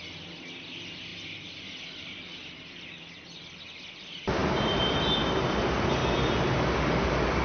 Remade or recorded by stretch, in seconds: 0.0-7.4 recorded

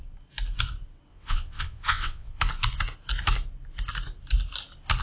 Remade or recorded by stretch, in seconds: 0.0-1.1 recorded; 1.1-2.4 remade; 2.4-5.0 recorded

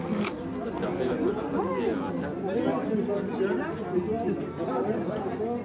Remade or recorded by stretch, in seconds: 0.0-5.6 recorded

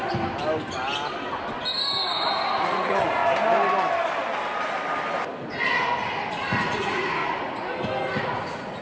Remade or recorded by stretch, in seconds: 0.0-2.6 recorded; 2.6-3.2 remade; 3.2-6.4 recorded; 6.4-7.2 remade; 7.2-8.2 recorded; 8.2-8.8 remade

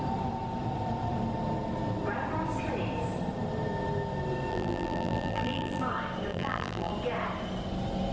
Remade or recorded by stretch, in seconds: 0.0-4.5 recorded; 4.5-5.8 remade; 5.8-6.3 recorded; 6.3-6.9 remade; 6.9-8.1 recorded

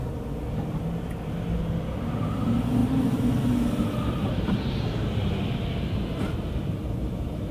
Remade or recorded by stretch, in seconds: 0.0-2.8 recorded; 2.8-3.6 remade; 3.6-7.5 recorded